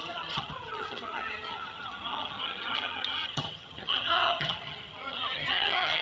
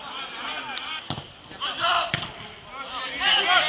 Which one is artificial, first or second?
first